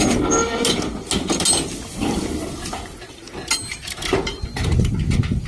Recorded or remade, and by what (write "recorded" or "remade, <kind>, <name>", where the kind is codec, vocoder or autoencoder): recorded